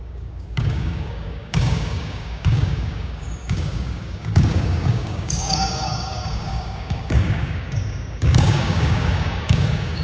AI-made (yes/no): yes